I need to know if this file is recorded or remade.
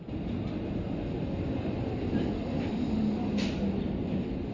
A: recorded